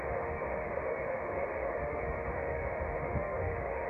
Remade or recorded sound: remade